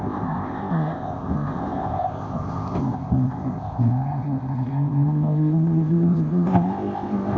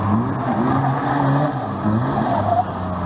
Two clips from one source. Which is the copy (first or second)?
first